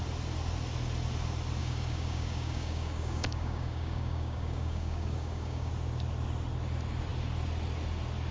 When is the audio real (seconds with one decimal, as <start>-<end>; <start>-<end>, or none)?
0.0-1.6; 5.7-8.3